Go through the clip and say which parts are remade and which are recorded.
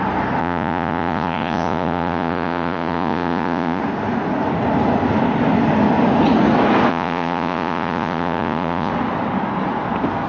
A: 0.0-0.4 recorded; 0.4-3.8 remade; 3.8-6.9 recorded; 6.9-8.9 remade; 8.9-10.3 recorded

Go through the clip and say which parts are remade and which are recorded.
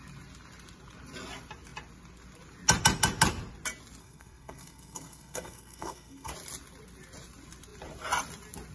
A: 0.0-4.0 recorded; 4.0-6.3 remade; 6.3-8.7 recorded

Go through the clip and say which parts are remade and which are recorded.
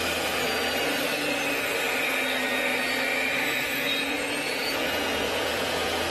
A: 0.0-3.1 recorded; 3.1-6.1 remade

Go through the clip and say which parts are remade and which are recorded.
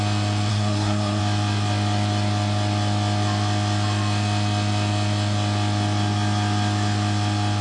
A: 0.0-0.5 recorded; 0.5-1.2 remade; 1.2-7.6 recorded